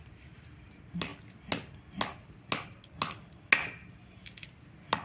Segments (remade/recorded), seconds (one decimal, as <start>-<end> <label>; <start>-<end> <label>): 0.0-5.0 recorded